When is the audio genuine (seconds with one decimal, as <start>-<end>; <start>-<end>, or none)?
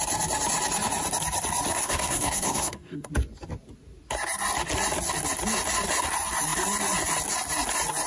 0.0-1.7; 3.1-8.1